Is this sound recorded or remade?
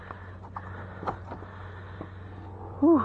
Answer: recorded